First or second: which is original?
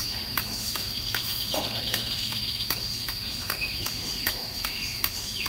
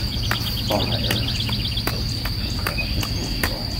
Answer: second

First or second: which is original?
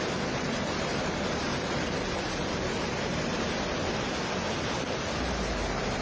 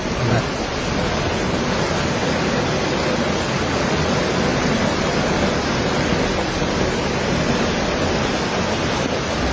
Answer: second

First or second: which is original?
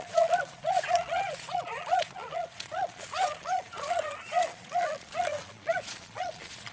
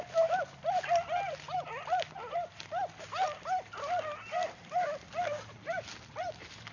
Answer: second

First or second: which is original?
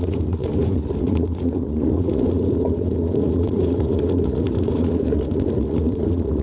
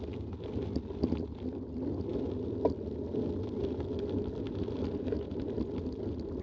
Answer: second